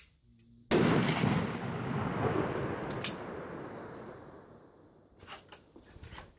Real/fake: real